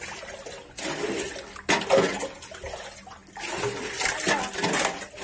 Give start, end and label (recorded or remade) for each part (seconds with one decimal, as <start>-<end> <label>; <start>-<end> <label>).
0.0-5.2 recorded